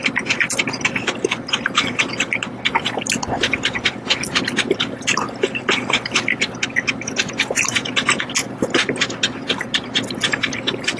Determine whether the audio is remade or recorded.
recorded